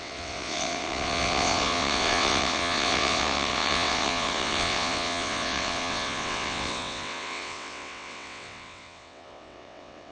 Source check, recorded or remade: remade